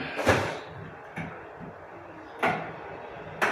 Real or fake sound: real